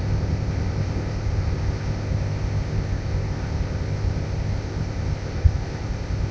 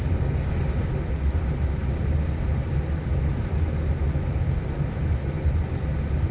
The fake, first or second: first